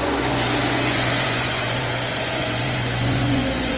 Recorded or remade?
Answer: remade